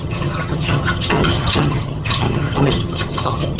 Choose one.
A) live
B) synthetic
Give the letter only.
B